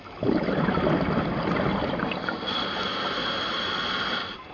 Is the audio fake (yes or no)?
no